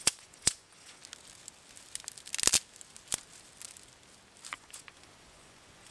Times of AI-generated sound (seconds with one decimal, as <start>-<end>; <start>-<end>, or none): 0.0-1.0; 4.5-5.9